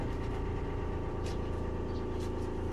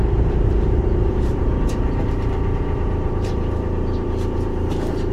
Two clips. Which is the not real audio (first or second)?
second